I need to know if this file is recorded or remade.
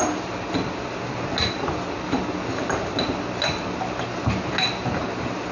recorded